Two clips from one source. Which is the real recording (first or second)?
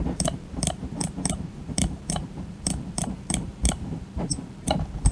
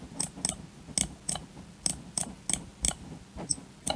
second